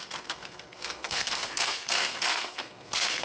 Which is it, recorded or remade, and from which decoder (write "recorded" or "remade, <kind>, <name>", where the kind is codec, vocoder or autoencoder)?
remade, codec, SNAC